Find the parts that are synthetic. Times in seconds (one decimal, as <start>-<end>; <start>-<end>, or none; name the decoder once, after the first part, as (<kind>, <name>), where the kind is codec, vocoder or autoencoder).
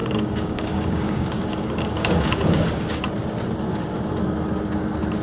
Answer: 0.0-3.0 (codec, DAC)